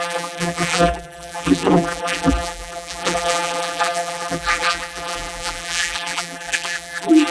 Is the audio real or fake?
fake